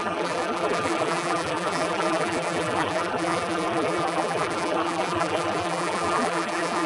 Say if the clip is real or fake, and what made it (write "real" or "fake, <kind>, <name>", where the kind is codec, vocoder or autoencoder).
fake, vocoder, BigVGAN v2